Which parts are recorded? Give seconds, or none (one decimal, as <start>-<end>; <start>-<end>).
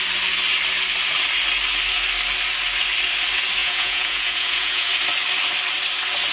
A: 0.0-3.6; 4.9-6.3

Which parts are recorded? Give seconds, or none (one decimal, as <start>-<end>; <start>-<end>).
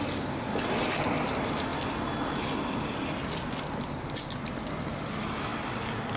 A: 0.0-6.2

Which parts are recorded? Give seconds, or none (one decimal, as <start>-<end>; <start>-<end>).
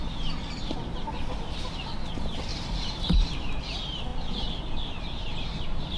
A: 0.0-2.5; 3.6-6.0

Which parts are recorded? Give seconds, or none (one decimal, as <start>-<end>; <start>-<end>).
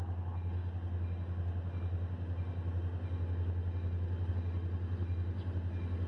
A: 0.0-6.1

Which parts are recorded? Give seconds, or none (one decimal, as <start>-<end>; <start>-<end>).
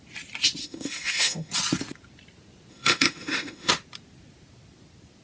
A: 0.0-0.6; 1.5-2.7; 3.7-5.2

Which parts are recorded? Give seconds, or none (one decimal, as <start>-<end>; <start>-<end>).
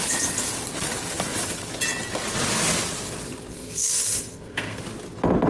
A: 0.0-3.5; 4.8-5.5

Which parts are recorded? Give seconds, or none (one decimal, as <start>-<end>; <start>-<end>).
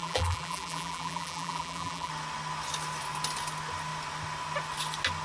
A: 2.1-5.2